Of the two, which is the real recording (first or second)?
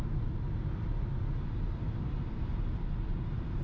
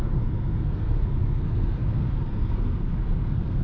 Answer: first